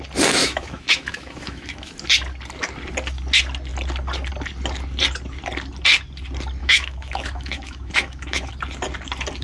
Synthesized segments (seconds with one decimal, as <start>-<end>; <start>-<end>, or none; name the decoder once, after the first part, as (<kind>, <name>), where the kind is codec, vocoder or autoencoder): 0.4-1.9 (autoencoder, DAC-VAE); 6.6-8.5